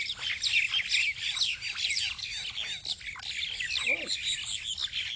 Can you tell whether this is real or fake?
real